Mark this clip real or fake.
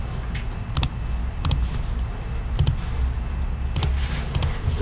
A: real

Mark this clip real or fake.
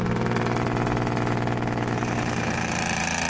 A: real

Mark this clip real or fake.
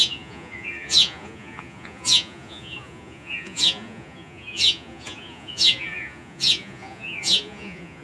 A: fake